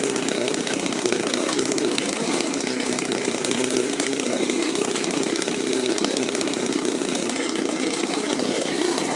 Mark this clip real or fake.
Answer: fake